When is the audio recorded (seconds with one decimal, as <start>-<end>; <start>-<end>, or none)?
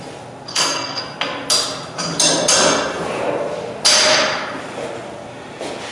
0.0-0.5; 1.0-5.9